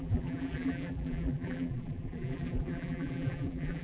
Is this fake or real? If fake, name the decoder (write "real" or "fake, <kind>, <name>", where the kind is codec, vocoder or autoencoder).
fake, vocoder, BigVGAN v2